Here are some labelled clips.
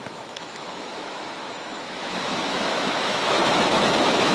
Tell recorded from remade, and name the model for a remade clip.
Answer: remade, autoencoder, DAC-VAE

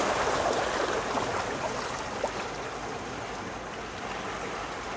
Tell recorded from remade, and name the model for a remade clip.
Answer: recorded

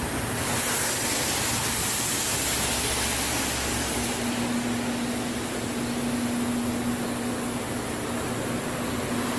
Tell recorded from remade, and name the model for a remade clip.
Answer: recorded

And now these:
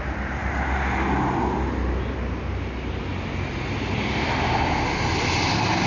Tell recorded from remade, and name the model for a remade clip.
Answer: recorded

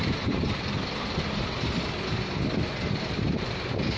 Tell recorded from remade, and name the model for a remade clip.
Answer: remade, vocoder, BigVGAN v2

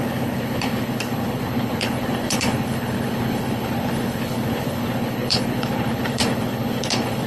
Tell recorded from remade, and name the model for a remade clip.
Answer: remade, codec, HILCodec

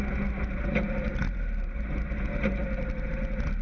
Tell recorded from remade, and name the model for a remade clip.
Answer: recorded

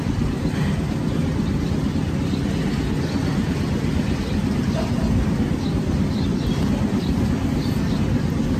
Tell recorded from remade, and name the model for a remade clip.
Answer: recorded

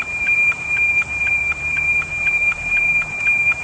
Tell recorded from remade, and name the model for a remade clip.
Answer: remade, vocoder, BigVGAN v2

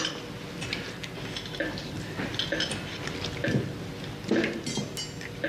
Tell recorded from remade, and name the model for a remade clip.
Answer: recorded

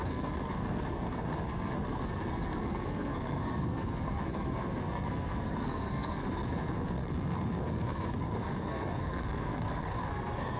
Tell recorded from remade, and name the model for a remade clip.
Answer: remade, codec, SNAC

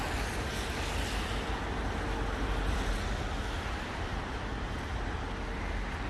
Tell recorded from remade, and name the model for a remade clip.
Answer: recorded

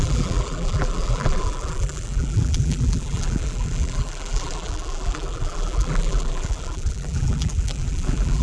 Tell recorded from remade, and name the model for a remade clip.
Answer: remade, vocoder, BigVGAN v2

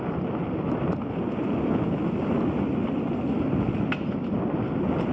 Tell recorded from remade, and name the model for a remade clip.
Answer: recorded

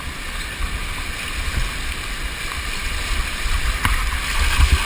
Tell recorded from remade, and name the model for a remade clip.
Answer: recorded